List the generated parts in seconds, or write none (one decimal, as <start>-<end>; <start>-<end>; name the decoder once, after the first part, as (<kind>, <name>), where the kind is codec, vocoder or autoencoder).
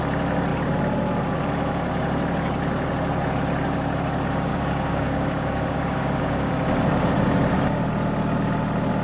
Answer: 4.5-6.5 (codec, DAC)